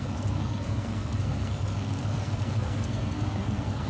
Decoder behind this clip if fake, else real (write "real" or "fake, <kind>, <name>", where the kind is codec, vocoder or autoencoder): fake, codec, SNAC